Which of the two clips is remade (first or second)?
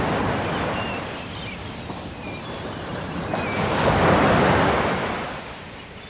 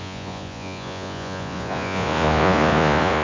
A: second